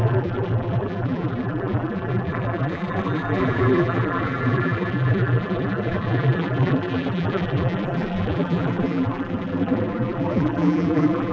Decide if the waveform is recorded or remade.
remade